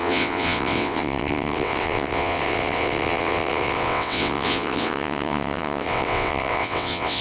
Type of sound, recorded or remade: remade